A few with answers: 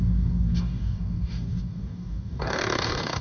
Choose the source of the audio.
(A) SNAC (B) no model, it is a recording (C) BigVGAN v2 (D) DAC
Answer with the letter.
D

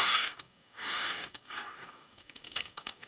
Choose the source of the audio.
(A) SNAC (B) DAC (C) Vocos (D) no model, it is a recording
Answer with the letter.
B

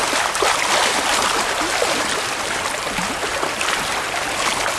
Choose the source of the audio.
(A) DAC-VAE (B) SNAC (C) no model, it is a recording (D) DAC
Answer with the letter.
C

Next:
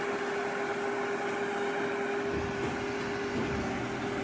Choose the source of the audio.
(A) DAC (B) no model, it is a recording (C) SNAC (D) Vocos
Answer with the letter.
B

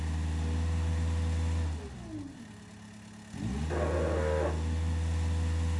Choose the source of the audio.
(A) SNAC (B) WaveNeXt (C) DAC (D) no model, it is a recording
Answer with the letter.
D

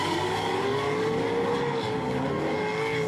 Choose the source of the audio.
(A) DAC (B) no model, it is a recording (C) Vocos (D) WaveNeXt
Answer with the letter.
A